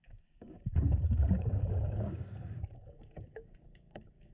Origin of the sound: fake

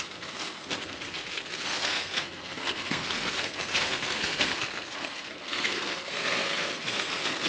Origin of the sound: fake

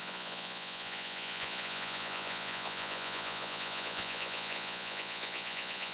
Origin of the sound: fake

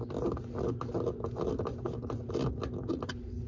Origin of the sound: real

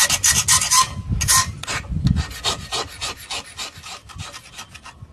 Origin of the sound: real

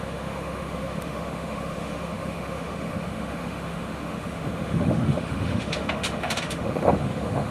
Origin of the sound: fake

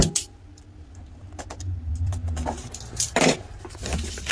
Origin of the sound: real